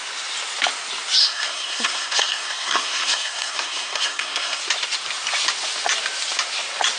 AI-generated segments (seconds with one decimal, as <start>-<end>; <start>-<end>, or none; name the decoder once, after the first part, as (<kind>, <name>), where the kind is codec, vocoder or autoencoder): 1.2-4.6 (codec, SNAC)